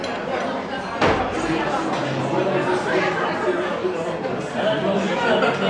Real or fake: real